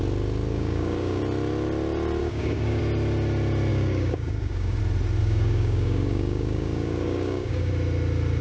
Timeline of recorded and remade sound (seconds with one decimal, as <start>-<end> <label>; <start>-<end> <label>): 0.0-0.5 recorded; 0.5-1.2 remade; 1.2-2.2 recorded; 2.2-2.8 remade; 2.8-3.7 recorded; 3.7-4.8 remade; 4.8-5.2 recorded; 5.2-7.7 remade; 7.7-8.4 recorded

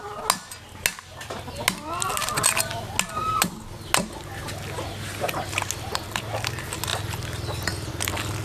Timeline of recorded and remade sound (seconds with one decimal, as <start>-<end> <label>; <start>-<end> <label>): 0.0-8.4 recorded

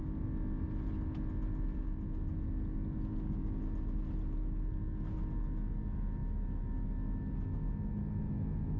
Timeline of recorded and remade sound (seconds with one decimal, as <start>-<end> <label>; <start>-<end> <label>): 0.0-8.8 recorded